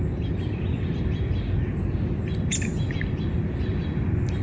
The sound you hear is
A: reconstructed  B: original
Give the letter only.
B